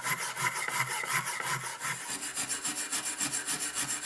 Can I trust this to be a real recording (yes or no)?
yes